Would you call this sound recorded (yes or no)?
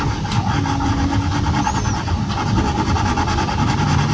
yes